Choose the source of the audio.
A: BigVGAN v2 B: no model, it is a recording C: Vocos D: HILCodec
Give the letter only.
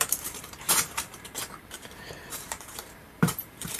A